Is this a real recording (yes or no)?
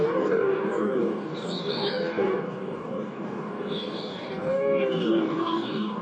no